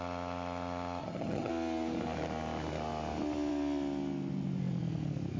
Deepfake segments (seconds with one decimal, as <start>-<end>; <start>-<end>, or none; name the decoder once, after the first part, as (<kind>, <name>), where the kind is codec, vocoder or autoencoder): 1.0-1.5 (vocoder, HiFi-GAN)